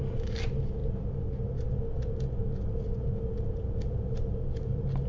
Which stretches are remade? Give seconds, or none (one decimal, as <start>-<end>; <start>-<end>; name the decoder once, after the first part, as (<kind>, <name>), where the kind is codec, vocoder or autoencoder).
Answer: none